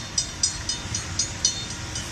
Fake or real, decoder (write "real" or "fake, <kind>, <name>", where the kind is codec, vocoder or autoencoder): real